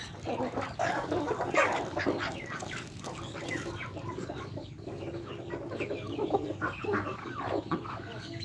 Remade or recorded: remade